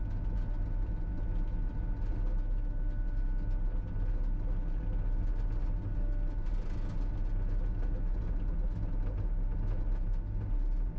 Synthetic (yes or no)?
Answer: no